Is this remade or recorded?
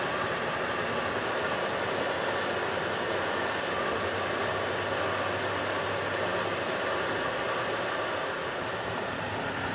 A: recorded